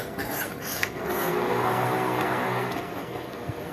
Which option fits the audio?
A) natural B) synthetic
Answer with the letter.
B